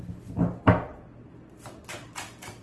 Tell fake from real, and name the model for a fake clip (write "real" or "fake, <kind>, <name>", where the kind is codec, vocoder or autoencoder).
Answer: real